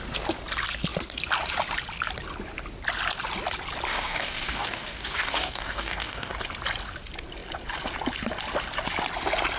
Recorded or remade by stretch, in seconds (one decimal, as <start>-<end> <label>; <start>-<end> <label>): 0.0-3.9 recorded; 3.9-6.3 remade; 6.3-9.6 recorded